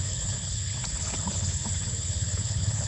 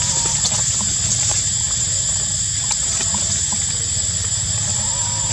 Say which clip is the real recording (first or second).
second